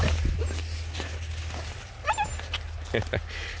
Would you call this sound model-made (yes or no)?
no